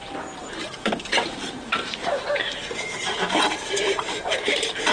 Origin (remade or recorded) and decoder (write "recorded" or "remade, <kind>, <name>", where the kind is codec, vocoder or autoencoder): remade, vocoder, BigVGAN v2